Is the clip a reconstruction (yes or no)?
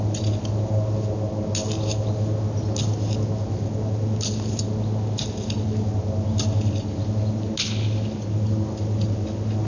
no